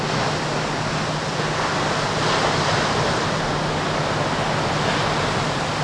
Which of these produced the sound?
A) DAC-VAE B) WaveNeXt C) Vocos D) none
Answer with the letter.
D